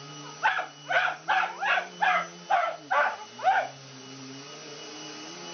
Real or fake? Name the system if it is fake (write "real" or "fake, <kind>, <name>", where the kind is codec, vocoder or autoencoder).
real